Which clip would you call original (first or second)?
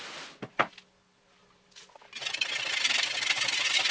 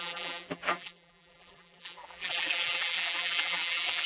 first